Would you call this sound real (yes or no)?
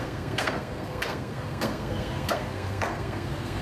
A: no